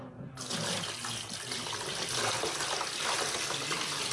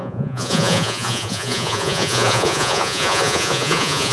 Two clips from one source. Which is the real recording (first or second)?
first